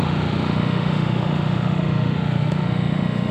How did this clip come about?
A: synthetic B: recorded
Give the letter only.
A